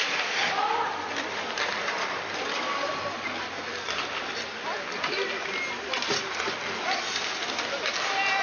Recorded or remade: recorded